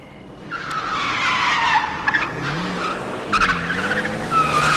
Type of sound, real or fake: real